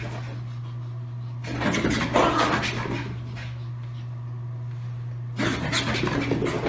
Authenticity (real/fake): real